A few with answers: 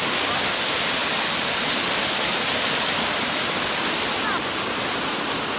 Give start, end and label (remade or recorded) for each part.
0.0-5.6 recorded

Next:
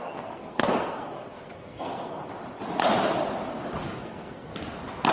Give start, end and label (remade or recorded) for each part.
0.0-2.3 remade; 2.3-4.0 recorded; 4.0-4.5 remade; 4.5-5.1 recorded